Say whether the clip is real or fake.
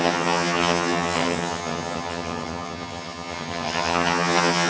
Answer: fake